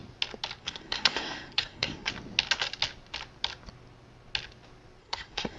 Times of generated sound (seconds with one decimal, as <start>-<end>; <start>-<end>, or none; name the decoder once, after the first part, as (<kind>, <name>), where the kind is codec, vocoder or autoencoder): 0.6-2.1 (codec, SNAC); 5.0-5.6